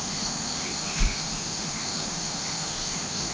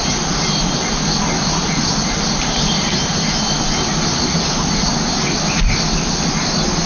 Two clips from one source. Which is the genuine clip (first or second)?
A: second